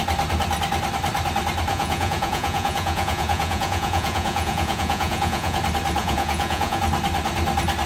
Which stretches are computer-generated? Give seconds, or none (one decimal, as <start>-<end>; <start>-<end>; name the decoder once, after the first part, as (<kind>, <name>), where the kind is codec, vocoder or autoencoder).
1.7-5.6 (vocoder, Vocos); 6.0-6.8